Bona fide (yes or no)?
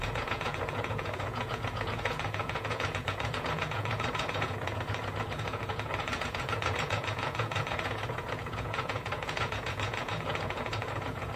no